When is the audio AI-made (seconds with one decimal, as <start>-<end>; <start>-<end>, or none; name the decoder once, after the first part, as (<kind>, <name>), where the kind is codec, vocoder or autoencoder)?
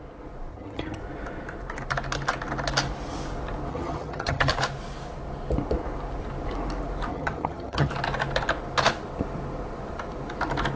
0.5-1.0 (vocoder, HiFi-GAN); 3.7-4.5; 7.1-7.9